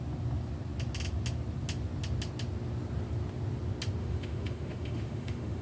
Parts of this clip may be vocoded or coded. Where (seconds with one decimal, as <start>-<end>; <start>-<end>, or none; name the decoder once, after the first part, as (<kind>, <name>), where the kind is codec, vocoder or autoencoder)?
4.0-5.6 (autoencoder, DAC-VAE)